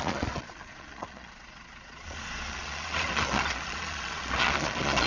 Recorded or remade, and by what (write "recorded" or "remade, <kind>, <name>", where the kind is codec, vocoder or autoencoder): remade, vocoder, Vocos